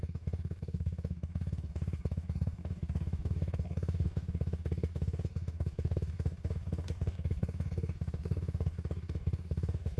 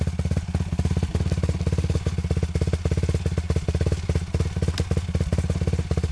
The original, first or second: second